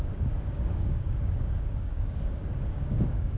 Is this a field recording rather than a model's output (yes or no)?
no